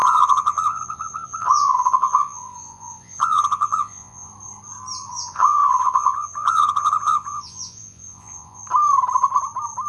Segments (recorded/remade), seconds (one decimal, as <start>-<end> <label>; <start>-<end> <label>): 0.0-4.3 remade; 4.3-5.1 recorded; 5.1-8.6 remade; 8.6-9.9 recorded